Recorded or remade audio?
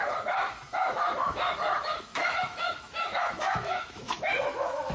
remade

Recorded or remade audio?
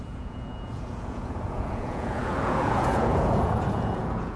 remade